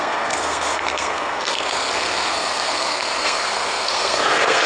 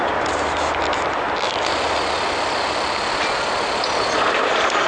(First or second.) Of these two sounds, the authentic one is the second